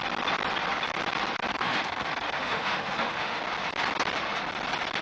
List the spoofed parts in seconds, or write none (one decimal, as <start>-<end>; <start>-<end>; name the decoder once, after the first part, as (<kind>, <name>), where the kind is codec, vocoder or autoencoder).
1.5-3.4 (autoencoder, DAC-VAE)